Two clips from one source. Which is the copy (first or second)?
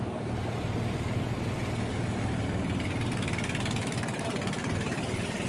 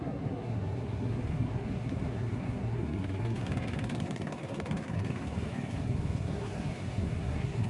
second